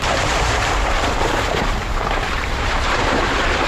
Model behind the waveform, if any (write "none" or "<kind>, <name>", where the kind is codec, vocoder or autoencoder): vocoder, BigVGAN v2